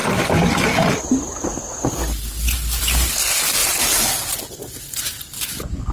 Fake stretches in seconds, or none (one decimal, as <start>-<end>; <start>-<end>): none